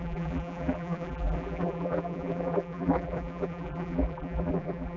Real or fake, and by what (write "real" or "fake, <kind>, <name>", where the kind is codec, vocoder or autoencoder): fake, vocoder, BigVGAN v2